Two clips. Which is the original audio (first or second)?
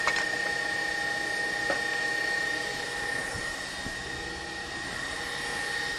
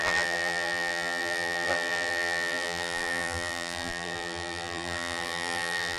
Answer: first